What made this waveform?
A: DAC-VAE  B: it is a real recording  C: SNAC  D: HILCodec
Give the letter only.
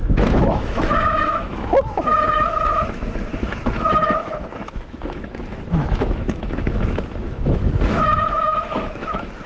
A